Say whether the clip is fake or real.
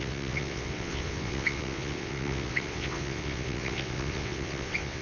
fake